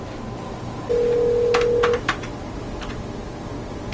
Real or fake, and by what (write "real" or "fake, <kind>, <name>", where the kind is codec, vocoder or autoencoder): real